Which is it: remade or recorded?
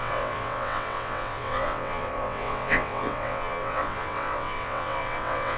remade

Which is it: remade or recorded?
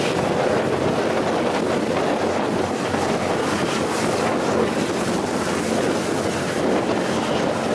recorded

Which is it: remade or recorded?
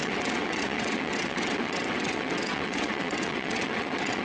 remade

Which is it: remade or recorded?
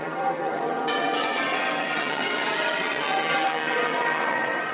remade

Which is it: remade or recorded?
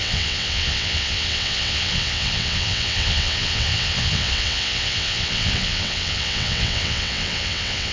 remade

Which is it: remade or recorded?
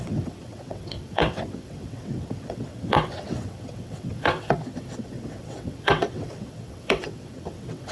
remade